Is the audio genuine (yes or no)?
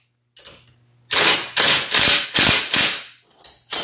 yes